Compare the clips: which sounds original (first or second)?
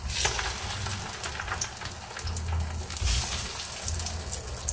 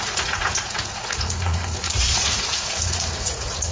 first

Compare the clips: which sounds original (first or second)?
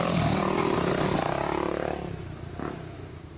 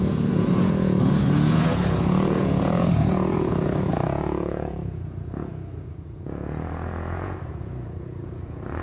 first